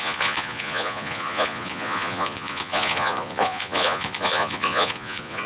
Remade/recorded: remade